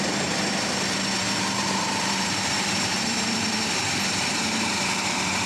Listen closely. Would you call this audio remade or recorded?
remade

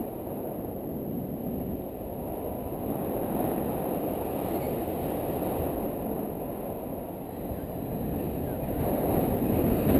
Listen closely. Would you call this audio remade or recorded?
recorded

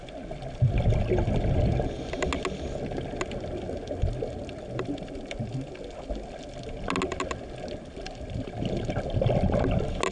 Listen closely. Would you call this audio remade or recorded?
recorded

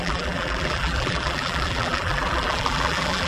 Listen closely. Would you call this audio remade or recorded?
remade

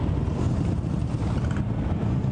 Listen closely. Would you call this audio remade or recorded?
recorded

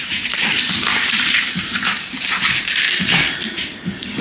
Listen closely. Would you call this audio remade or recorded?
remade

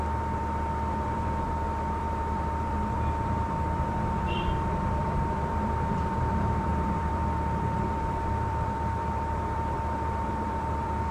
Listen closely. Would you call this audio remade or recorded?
remade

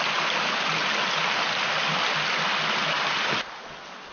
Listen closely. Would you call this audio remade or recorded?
recorded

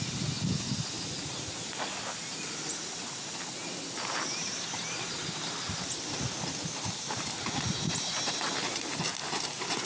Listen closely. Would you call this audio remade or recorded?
recorded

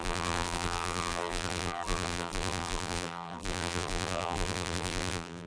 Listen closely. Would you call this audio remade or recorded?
remade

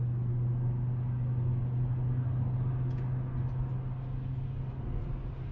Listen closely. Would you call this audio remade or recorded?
recorded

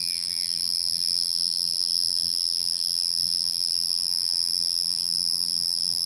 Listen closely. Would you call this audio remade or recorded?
remade